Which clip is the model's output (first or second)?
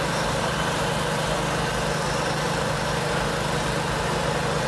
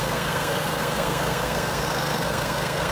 second